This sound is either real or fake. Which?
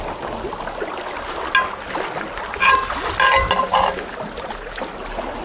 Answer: real